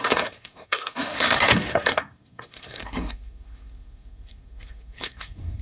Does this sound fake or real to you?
fake